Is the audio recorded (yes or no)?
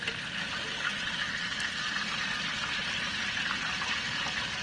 yes